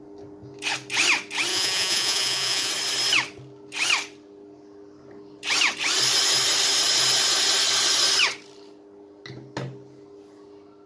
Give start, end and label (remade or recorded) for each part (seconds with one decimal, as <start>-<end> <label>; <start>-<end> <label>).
0.0-1.5 recorded; 1.5-2.7 remade; 2.7-10.9 recorded